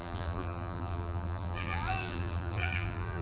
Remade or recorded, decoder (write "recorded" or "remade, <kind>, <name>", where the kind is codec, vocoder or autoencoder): remade, vocoder, BigVGAN v2